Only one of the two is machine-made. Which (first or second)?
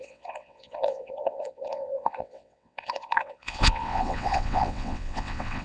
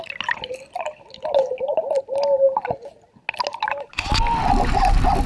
first